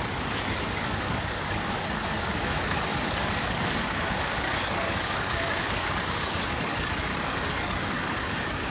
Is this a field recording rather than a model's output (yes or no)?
no